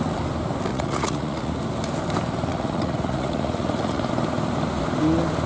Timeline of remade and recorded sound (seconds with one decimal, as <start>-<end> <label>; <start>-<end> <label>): 0.0-0.7 recorded; 0.7-1.5 remade; 1.5-2.5 recorded; 2.5-4.1 remade; 4.1-5.5 recorded